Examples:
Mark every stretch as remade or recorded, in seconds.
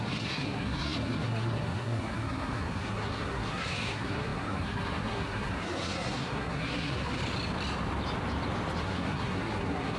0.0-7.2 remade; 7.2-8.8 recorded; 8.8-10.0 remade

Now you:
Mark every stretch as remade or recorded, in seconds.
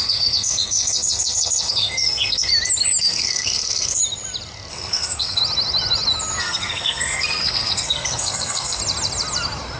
0.0-2.5 remade; 2.5-3.0 recorded; 3.0-4.0 remade; 4.0-4.7 recorded; 4.7-5.4 remade; 5.4-6.4 recorded; 6.4-8.8 remade; 8.8-9.8 recorded